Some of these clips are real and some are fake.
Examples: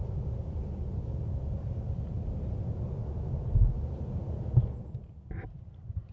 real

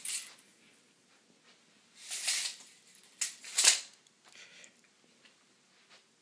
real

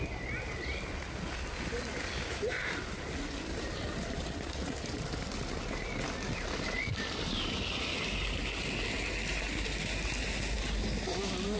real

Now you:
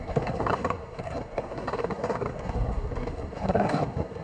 fake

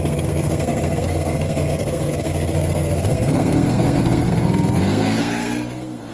fake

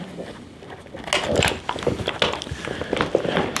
real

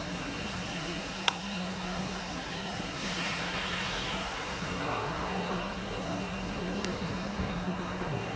fake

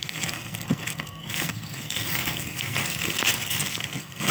fake